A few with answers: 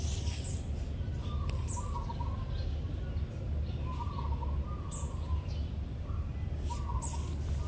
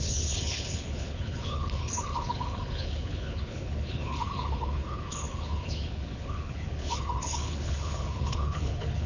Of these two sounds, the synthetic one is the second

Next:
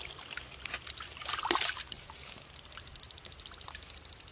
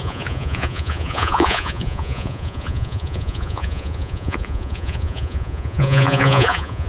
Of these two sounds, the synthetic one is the second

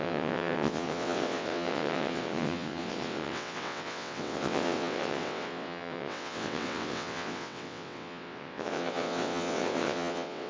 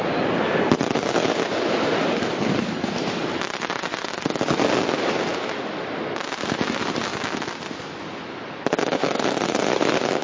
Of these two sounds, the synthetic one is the first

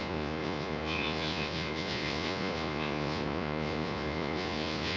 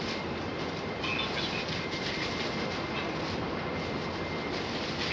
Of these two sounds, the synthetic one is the first